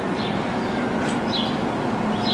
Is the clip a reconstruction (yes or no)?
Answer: no